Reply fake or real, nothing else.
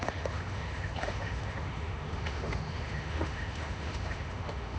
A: fake